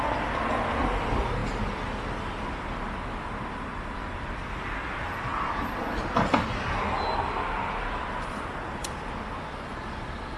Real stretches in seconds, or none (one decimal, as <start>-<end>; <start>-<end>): 0.0-10.4